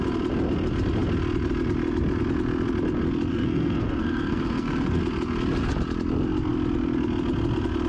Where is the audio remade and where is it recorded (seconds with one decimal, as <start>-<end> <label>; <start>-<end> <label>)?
0.0-3.3 recorded; 3.3-5.0 remade; 5.0-7.9 recorded